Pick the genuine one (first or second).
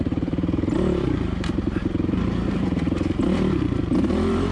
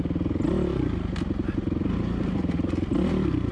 second